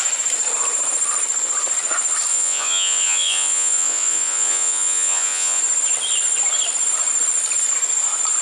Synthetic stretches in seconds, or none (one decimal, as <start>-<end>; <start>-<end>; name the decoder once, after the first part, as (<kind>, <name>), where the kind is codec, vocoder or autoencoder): 2.3-5.6 (vocoder, Vocos)